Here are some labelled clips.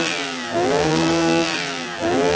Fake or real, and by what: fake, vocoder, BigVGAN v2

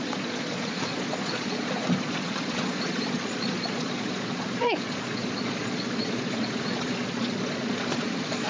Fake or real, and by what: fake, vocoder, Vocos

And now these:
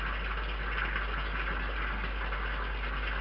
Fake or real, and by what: real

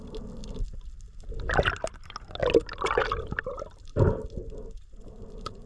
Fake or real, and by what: real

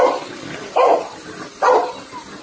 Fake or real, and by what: real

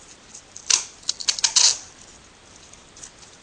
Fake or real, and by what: real